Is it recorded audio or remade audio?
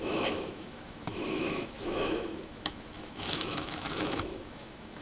remade